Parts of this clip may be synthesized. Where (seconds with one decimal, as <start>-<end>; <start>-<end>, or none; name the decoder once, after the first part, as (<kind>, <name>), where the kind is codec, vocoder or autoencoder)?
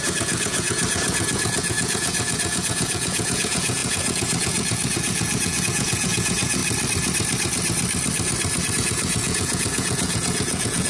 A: 0.0-6.6 (vocoder, Vocos); 8.7-10.9